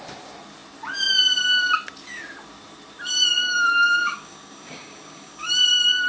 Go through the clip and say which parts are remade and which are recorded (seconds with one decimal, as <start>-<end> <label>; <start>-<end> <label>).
0.0-3.4 recorded; 3.4-5.5 remade; 5.5-6.1 recorded